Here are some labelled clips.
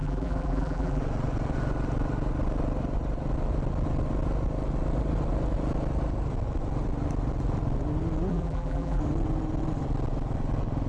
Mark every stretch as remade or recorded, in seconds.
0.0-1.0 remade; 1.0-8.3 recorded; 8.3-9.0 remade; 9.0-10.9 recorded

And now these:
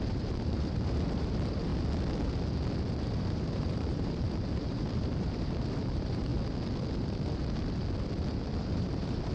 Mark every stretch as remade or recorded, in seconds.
0.0-1.7 remade; 1.7-2.9 recorded; 2.9-6.3 remade; 6.3-8.6 recorded; 8.6-9.3 remade